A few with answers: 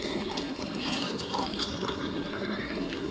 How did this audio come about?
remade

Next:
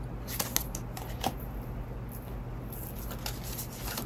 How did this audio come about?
recorded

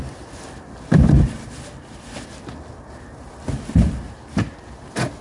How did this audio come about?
recorded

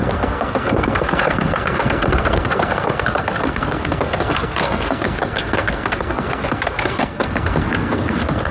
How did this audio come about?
remade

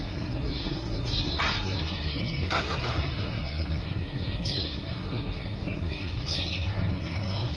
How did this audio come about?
remade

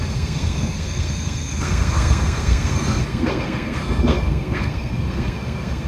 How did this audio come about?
remade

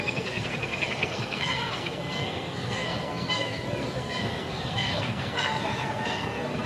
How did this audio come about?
remade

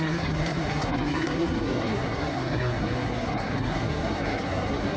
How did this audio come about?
remade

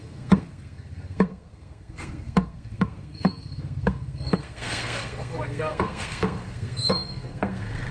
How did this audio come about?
remade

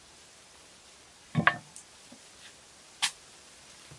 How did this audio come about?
recorded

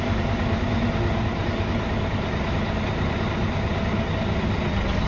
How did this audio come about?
recorded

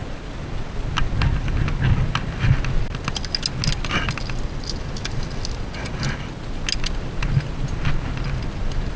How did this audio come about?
recorded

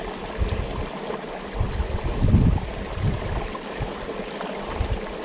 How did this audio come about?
recorded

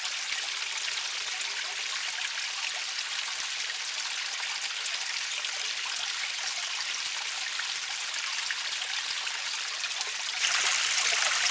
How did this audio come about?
recorded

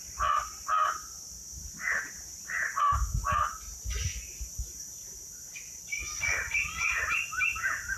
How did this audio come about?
recorded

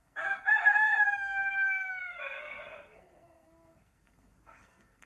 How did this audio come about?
remade